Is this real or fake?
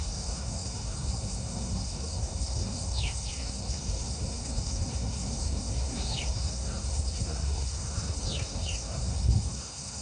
fake